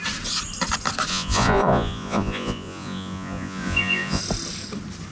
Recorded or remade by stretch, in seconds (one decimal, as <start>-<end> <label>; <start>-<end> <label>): 0.0-1.1 recorded; 1.1-4.2 remade; 4.2-5.1 recorded

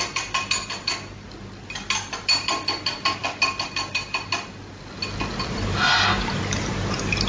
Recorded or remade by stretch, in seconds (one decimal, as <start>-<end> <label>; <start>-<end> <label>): 0.0-7.3 recorded

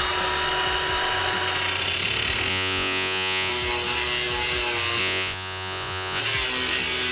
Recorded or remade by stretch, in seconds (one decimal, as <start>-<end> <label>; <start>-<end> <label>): 0.0-2.5 recorded; 2.5-3.5 remade; 3.5-5.0 recorded; 5.0-6.2 remade; 6.2-7.1 recorded